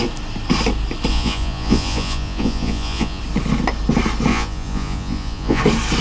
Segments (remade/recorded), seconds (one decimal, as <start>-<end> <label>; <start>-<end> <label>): 0.0-1.1 recorded; 1.1-3.2 remade; 3.2-4.3 recorded; 4.3-5.6 remade; 5.6-6.0 recorded